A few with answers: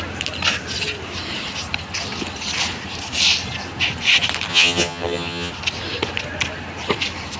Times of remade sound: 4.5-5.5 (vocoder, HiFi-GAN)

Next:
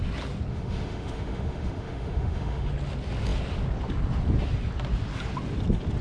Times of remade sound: 0.5-2.7 (autoencoder, DAC-VAE)

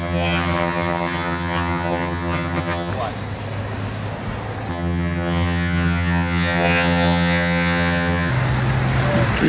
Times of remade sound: 0.0-2.9 (vocoder, HiFi-GAN); 4.7-8.3

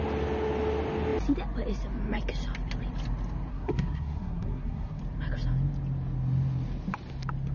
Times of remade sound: 3.5-5.0 (codec, SNAC)

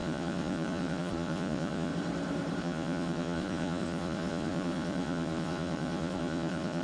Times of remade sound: 0.0-1.9 (vocoder, Vocos); 2.6-6.8

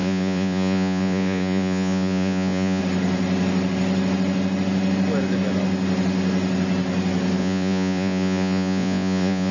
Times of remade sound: 0.0-2.8 (vocoder, Vocos); 7.4-9.5